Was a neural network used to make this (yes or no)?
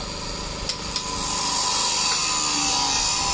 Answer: no